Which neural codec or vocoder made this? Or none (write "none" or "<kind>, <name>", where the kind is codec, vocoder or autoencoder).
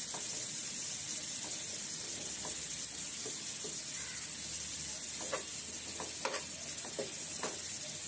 none